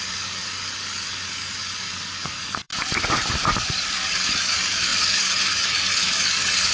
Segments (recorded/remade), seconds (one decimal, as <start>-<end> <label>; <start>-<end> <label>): 0.0-2.7 remade; 2.7-3.9 recorded; 3.9-6.7 remade